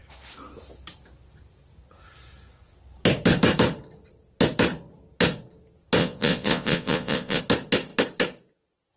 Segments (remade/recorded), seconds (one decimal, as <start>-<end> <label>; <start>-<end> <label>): 0.0-6.0 recorded; 6.0-7.4 remade; 7.4-9.0 recorded